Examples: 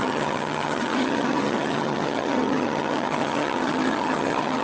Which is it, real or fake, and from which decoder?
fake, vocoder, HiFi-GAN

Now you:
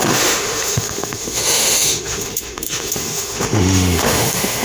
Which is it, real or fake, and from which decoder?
fake, autoencoder, DAC-VAE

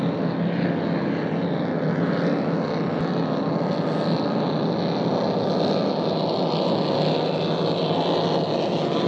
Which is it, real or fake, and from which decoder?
real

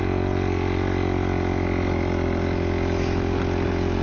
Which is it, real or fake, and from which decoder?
real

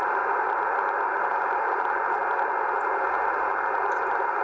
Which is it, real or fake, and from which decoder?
real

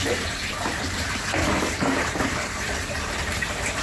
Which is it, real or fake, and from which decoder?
fake, vocoder, BigVGAN v2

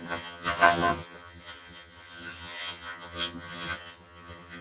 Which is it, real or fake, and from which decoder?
fake, vocoder, HiFi-GAN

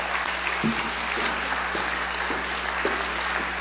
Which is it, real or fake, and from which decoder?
real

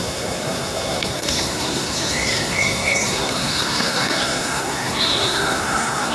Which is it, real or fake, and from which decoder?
fake, codec, SNAC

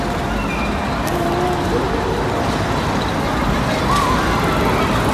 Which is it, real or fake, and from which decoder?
real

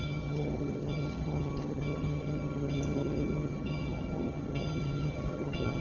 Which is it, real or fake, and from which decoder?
fake, vocoder, HiFi-GAN